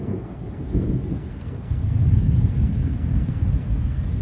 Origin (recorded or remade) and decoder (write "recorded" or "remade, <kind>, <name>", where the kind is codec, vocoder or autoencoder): remade, codec, SNAC